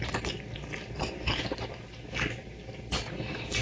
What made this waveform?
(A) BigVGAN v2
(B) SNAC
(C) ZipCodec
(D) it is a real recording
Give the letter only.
D